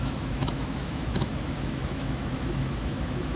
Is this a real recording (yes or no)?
no